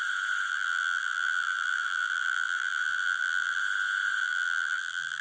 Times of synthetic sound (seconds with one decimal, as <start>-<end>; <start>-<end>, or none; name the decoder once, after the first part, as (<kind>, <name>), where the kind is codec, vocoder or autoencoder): 0.5-3.6 (vocoder, BigVGAN v2); 4.2-5.2